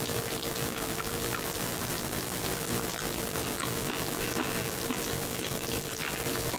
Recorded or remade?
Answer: remade